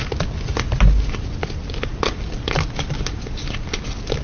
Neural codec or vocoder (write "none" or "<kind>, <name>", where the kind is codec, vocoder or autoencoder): none